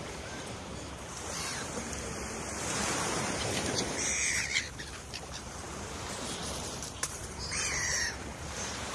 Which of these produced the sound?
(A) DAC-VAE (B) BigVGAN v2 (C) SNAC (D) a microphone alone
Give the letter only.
B